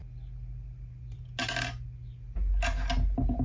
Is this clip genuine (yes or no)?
yes